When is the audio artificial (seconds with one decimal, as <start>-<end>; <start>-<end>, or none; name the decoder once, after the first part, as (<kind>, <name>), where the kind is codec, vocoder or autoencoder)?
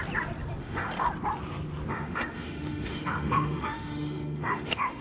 0.6-1.1 (autoencoder, DAC-VAE); 1.9-5.0